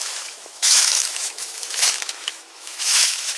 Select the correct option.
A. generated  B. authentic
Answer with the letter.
A